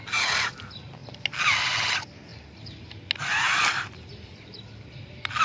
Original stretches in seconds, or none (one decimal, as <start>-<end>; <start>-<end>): 0.0-5.4